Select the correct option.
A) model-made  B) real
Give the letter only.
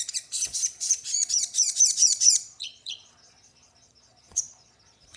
A